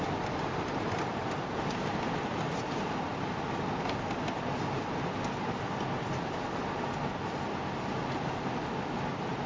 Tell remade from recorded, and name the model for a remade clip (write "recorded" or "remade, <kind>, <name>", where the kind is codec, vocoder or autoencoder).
recorded